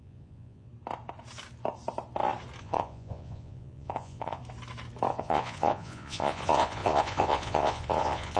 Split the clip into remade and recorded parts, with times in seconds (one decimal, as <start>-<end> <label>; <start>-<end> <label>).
0.0-0.7 remade; 0.7-2.6 recorded; 2.6-4.4 remade; 4.4-5.1 recorded; 5.1-8.4 remade